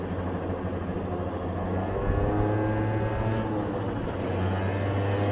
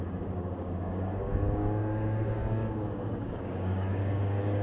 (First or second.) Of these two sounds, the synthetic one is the second